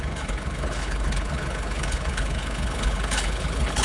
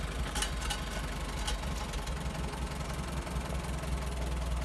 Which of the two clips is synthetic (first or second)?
first